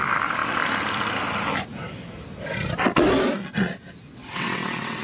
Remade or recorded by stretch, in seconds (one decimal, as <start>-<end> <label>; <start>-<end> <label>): 0.0-4.2 recorded; 4.2-5.0 remade